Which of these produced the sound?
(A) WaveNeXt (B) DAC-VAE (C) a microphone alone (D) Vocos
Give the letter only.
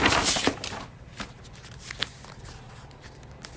C